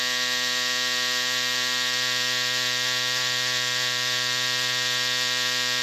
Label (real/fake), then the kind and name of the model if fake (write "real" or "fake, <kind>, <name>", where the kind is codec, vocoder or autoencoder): real